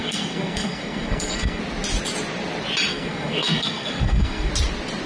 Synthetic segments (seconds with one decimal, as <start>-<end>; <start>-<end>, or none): 0.0-1.6; 2.9-4.5